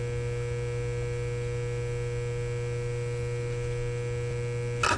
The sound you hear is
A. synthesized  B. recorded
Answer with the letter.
B